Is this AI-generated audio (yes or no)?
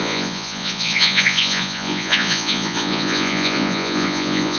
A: yes